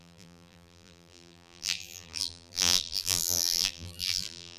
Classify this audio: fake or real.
fake